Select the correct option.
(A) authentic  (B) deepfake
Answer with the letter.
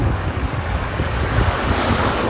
B